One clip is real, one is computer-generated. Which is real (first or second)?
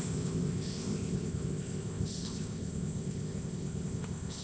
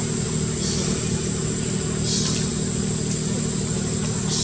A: second